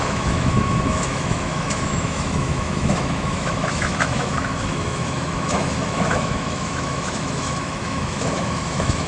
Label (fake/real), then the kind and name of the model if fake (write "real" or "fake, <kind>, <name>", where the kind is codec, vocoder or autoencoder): fake, autoencoder, DAC-VAE